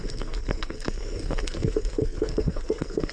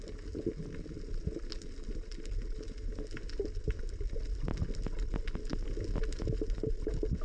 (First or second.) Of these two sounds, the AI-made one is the first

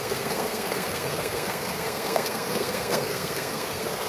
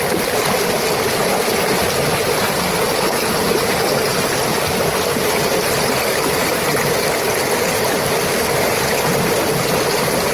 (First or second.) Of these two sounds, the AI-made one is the first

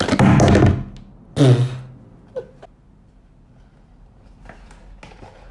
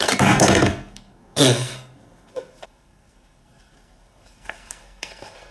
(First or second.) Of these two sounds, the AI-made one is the second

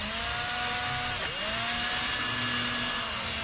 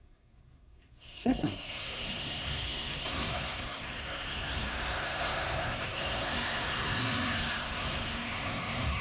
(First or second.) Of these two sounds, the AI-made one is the second